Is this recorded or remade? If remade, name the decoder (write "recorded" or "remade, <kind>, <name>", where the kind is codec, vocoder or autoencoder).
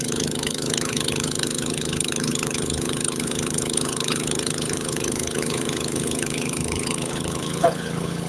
remade, codec, HILCodec